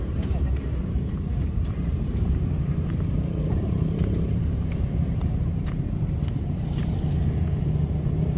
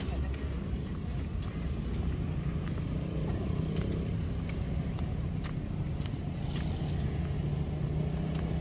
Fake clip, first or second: first